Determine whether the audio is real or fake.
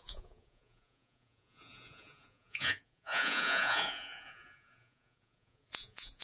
fake